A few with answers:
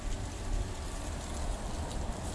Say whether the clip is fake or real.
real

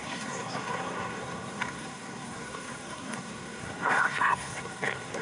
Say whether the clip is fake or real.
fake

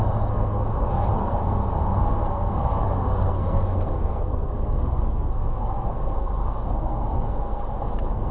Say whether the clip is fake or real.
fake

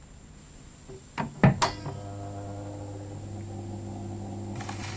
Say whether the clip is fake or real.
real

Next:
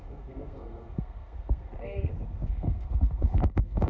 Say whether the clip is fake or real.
fake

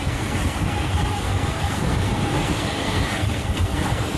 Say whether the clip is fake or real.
fake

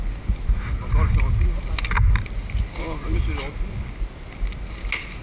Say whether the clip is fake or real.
real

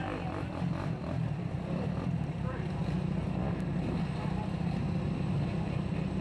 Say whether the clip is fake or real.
real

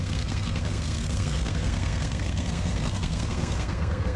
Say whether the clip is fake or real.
fake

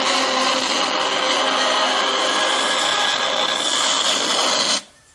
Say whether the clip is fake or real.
real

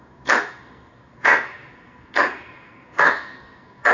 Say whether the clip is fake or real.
fake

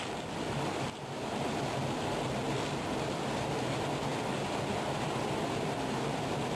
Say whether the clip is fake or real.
real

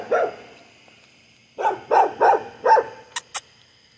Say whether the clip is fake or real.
real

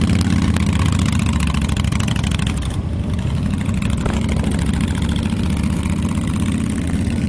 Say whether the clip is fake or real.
real